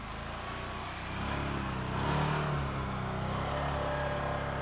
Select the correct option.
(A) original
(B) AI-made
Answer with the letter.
A